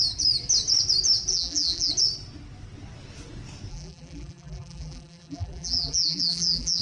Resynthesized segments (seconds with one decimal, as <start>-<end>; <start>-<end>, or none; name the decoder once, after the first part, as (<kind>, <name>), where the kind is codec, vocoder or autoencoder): 1.3-1.9 (vocoder, BigVGAN v2); 3.7-6.8